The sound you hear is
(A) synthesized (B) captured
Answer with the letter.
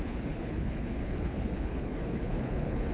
A